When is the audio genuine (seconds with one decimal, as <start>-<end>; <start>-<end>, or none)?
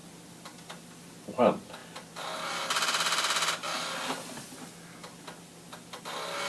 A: 0.0-6.5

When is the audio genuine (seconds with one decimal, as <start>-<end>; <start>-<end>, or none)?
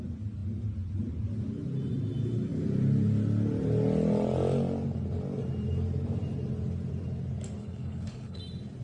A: 0.0-7.6; 8.4-8.8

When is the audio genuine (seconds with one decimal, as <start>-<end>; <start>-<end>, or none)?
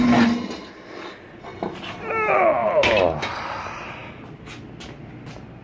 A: 0.0-1.5; 2.0-2.6; 3.2-5.6